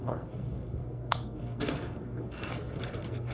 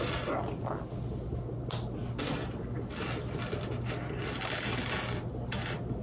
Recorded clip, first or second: second